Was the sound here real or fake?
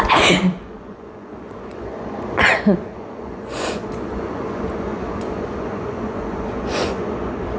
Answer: fake